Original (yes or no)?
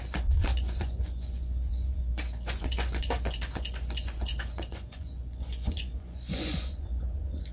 no